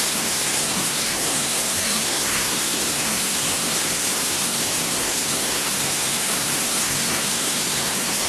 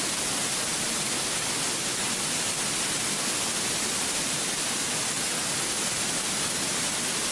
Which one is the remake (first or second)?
first